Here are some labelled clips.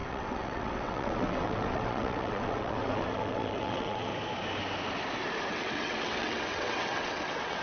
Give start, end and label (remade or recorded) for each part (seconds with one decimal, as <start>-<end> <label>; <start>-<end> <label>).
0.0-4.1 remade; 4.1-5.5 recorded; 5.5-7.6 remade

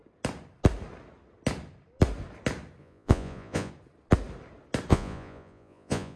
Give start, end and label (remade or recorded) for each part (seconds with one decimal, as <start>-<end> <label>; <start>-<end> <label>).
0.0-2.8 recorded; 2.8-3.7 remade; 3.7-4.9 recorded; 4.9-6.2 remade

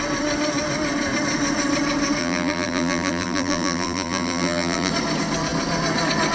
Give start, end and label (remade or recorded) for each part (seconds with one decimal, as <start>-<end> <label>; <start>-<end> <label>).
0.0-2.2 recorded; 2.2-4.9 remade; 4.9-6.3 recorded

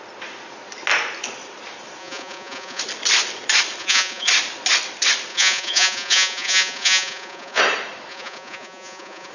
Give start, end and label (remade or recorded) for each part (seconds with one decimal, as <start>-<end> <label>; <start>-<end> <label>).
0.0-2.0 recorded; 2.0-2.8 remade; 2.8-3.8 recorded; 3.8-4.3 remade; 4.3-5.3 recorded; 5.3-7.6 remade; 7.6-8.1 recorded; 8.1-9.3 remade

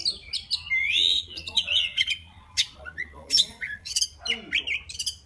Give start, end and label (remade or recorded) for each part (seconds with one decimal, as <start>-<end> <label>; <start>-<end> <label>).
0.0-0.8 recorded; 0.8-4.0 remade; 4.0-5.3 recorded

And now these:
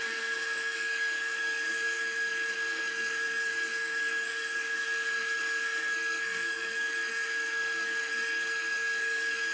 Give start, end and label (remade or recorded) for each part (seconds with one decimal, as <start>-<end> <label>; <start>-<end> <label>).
0.0-9.5 remade

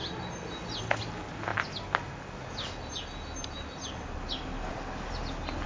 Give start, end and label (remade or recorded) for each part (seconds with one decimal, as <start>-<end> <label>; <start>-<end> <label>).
0.0-5.7 recorded

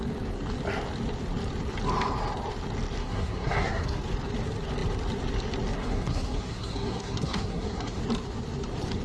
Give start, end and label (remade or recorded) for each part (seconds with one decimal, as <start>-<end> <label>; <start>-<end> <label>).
0.0-3.0 recorded; 3.0-4.0 remade; 4.0-5.8 recorded; 5.8-8.0 remade; 8.0-9.0 recorded